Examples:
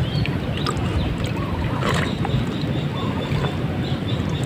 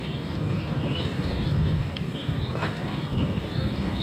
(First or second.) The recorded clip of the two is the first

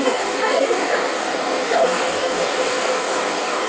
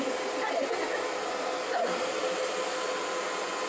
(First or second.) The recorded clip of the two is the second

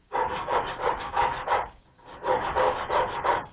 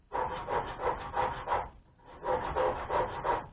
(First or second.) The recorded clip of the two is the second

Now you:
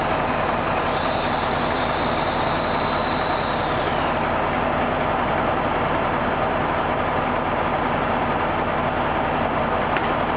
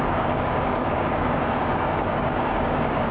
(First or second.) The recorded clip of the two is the first